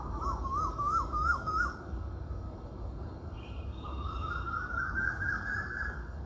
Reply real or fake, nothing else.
fake